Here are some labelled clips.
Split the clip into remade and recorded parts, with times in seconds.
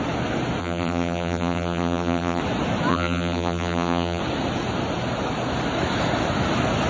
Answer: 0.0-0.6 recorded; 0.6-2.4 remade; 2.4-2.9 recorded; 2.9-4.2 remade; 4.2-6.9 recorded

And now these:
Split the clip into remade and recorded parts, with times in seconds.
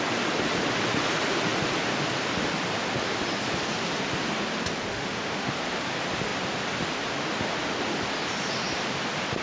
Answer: 0.0-4.9 recorded; 4.9-5.5 remade; 5.5-9.4 recorded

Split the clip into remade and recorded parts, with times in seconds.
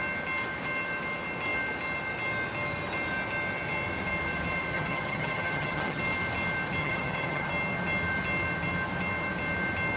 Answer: 0.0-4.7 recorded; 4.7-6.0 remade; 6.0-6.8 recorded; 6.8-7.5 remade; 7.5-10.0 recorded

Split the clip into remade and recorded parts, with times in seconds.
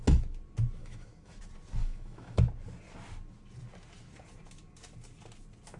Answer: 0.0-0.8 recorded; 0.8-1.4 remade; 1.4-1.8 recorded; 1.8-2.4 remade; 2.4-5.8 recorded